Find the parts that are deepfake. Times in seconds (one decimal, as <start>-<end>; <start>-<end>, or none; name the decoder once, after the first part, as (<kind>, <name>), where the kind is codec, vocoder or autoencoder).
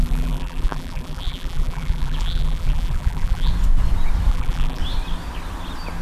0.0-3.5 (vocoder, BigVGAN v2); 4.3-4.8